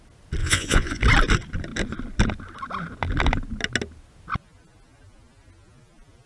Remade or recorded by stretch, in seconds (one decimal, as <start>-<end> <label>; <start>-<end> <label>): 0.0-0.4 recorded; 0.4-1.0 remade; 1.0-6.3 recorded